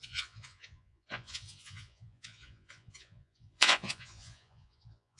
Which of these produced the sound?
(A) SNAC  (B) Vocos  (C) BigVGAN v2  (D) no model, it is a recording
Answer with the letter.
B